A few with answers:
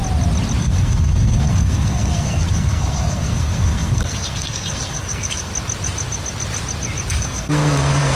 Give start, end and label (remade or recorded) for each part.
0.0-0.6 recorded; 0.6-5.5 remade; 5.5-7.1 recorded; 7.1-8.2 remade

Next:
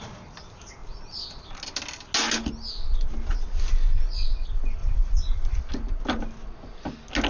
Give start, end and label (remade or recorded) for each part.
0.0-4.8 recorded; 4.8-5.6 remade; 5.6-7.3 recorded

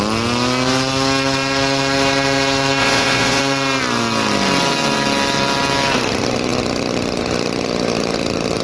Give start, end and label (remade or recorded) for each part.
0.0-2.8 recorded; 2.8-3.4 remade; 3.4-8.6 recorded

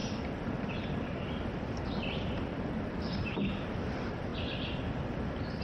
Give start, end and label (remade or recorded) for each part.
0.0-4.3 remade; 4.3-5.6 recorded

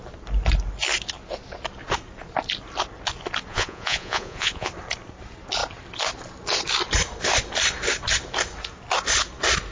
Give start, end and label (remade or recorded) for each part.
0.0-3.5 recorded; 3.5-4.7 remade; 4.7-9.7 recorded

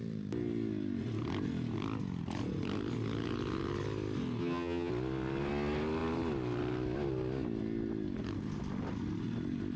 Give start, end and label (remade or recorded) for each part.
0.0-4.4 recorded; 4.4-4.9 remade; 4.9-9.8 recorded

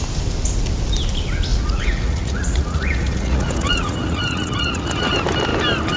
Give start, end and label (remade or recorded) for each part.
0.0-1.5 recorded; 1.5-5.1 remade; 5.1-6.0 recorded